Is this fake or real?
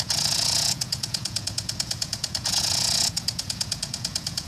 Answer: fake